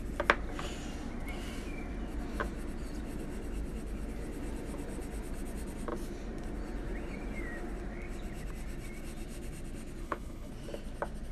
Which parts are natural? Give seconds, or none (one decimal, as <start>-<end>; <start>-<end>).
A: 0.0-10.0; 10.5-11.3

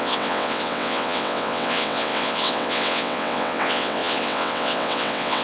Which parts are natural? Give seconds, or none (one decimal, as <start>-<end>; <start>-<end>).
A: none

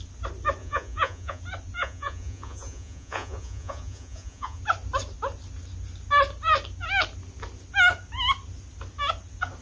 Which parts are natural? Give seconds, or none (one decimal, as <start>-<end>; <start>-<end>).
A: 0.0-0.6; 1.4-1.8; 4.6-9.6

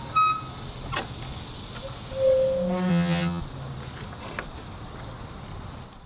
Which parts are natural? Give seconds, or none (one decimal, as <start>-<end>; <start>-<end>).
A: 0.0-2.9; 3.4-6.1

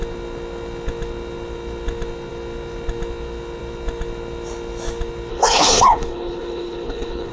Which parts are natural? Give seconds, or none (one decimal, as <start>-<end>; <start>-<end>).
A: 0.0-5.3

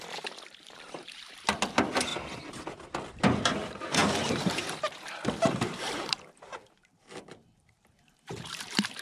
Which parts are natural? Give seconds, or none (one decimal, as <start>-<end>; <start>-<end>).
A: 2.1-3.1

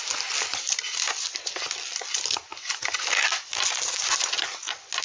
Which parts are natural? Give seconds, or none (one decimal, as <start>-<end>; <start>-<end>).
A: 0.0-5.0